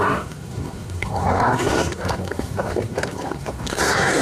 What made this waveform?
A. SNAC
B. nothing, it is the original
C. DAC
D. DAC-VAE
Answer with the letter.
A